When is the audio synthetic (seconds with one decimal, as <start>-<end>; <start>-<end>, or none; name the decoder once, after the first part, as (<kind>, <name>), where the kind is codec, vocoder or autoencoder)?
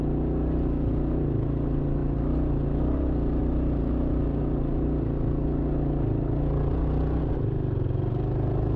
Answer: none